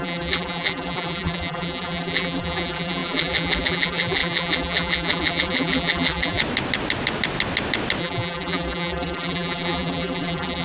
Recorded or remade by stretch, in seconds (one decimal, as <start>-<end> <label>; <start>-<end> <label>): 0.0-6.4 remade; 6.4-8.0 recorded; 8.0-10.6 remade